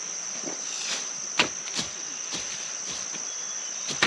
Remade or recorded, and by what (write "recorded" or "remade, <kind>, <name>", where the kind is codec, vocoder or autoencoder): recorded